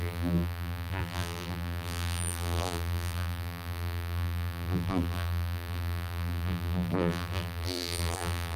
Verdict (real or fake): fake